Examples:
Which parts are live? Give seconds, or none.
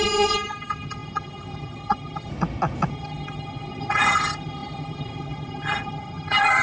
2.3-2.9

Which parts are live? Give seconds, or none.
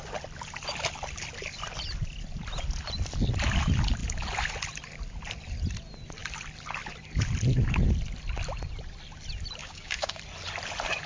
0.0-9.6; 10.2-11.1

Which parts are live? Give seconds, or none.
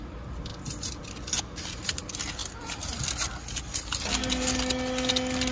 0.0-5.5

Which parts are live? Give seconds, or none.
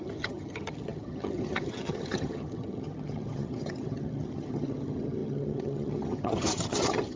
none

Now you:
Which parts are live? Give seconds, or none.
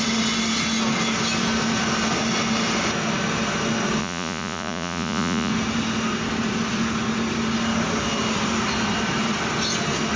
0.0-4.0; 5.5-10.2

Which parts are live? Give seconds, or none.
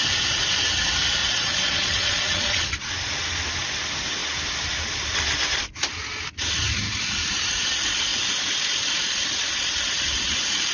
0.0-1.2; 2.9-10.7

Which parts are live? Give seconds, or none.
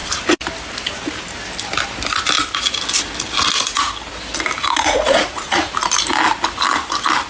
0.0-4.6; 5.7-7.3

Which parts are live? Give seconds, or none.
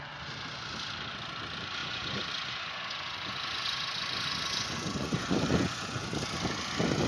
0.0-1.8; 6.1-7.1